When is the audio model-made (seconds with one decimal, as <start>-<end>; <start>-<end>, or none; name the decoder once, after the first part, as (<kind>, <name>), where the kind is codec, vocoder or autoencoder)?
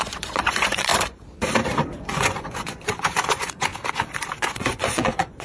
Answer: 0.0-0.9 (vocoder, Vocos); 1.9-3.7; 4.3-5.4